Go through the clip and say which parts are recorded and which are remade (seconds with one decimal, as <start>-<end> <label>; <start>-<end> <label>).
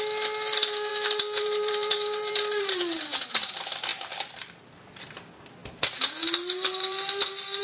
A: 0.0-0.9 recorded; 0.9-3.2 remade; 3.2-5.6 recorded; 5.6-7.6 remade